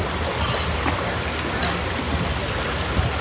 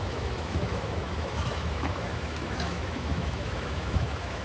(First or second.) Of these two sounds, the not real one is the second